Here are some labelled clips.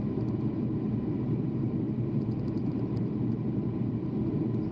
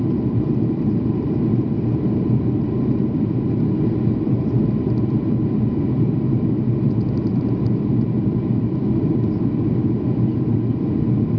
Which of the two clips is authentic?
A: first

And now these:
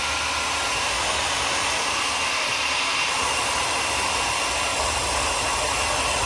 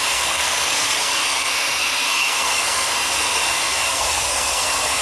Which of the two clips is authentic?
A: first